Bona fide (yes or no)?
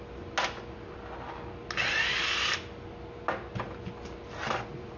yes